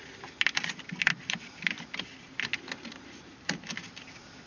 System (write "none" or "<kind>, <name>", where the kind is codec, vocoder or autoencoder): none